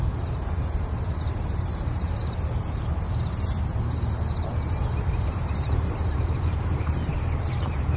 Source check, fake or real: fake